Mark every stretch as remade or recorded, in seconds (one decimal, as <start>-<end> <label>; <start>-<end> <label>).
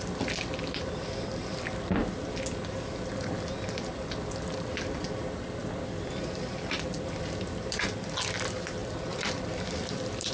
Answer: 0.0-5.6 recorded; 5.6-6.4 remade; 6.4-8.8 recorded; 8.8-10.3 remade